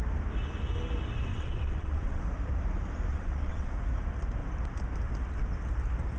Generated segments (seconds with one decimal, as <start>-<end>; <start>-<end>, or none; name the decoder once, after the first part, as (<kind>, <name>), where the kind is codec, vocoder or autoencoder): 1.3-2.2 (vocoder, WaveNeXt); 3.1-3.7